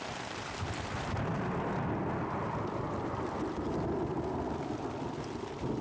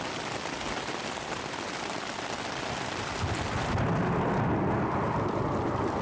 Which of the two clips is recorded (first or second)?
second